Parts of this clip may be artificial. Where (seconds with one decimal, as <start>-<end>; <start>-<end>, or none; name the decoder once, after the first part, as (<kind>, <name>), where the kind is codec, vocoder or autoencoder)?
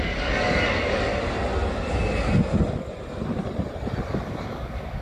0.0-1.1 (codec, DAC); 4.1-5.0